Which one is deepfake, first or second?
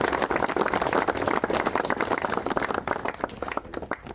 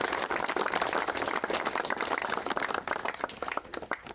second